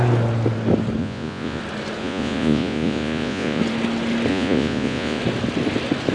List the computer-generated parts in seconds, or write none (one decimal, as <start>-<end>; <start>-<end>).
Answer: 1.0-1.6; 2.0-3.6; 4.3-5.2